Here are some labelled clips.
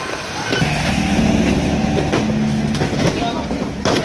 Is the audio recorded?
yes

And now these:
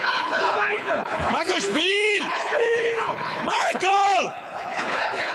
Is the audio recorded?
no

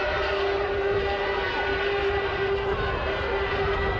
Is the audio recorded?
no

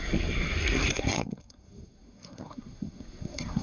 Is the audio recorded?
no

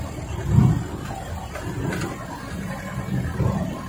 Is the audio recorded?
yes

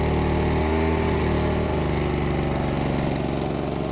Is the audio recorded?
yes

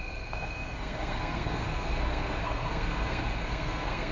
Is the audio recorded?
no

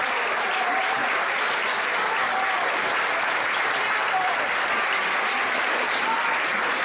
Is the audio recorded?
no